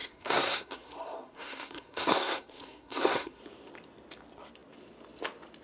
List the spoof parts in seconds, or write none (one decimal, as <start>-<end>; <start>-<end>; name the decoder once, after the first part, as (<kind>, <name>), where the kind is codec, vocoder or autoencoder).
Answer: 0.0-3.4 (codec, SNAC)